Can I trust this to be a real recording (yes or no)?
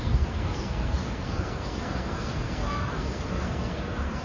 no